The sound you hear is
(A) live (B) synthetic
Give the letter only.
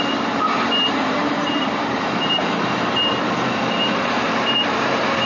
B